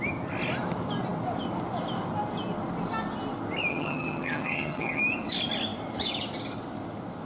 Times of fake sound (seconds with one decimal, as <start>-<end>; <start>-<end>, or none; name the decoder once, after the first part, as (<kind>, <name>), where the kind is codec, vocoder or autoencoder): 3.7-5.0 (vocoder, HiFi-GAN)